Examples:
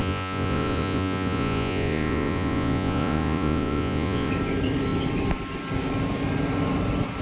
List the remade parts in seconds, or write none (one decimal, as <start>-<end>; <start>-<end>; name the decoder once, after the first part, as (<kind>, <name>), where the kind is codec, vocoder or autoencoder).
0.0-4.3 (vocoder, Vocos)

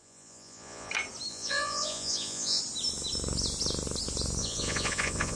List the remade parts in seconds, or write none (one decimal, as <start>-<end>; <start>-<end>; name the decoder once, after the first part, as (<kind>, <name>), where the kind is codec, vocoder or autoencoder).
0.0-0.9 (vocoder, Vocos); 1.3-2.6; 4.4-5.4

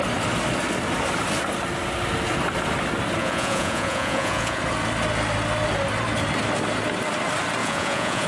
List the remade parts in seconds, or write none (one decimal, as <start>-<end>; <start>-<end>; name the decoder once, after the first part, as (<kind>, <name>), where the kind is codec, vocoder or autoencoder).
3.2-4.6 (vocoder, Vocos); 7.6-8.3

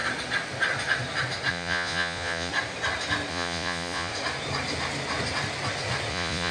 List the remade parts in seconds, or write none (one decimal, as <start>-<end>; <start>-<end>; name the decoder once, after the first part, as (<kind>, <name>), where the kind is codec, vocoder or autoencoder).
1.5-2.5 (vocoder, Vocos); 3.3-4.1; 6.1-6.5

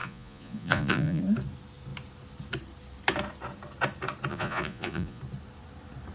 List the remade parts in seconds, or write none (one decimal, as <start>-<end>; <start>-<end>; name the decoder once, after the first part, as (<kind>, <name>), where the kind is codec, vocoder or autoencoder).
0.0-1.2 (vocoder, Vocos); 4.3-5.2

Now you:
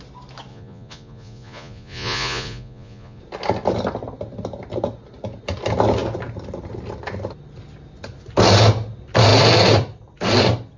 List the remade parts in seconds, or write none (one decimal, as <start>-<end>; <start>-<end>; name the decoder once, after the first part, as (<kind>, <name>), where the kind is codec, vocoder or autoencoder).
0.5-3.2 (vocoder, Vocos)

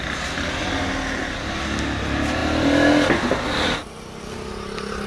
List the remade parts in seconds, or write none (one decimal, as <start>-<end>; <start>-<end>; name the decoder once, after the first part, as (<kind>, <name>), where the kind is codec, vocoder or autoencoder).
none

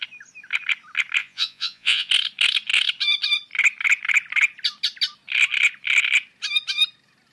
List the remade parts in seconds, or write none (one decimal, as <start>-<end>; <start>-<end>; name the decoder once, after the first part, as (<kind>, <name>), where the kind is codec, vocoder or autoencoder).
1.2-2.1 (vocoder, Vocos)